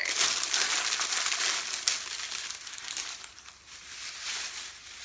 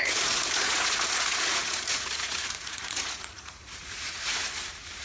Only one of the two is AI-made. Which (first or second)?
second